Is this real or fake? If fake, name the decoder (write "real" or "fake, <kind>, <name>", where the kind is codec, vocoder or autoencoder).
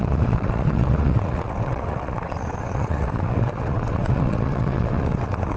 fake, vocoder, WaveNeXt